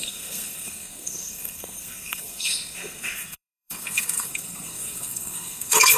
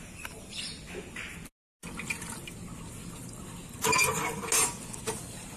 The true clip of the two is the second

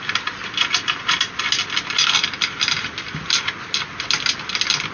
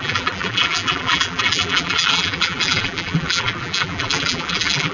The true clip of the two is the first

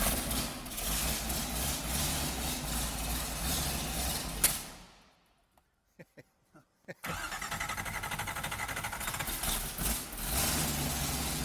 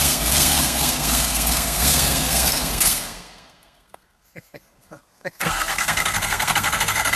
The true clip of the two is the first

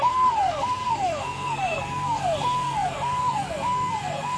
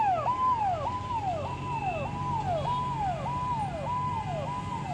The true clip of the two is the second